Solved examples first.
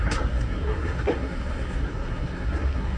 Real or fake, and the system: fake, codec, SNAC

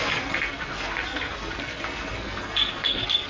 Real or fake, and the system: fake, codec, SNAC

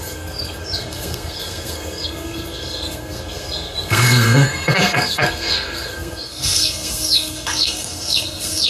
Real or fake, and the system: fake, codec, SNAC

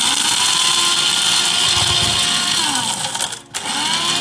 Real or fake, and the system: real